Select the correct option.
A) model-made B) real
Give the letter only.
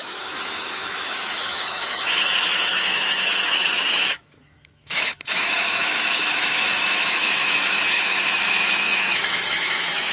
A